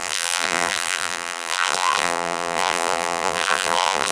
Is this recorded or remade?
remade